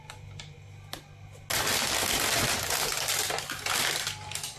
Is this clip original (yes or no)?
yes